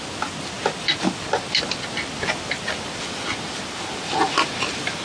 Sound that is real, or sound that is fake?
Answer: real